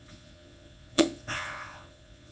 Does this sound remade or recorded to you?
remade